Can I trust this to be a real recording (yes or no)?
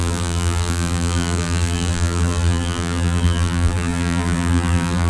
no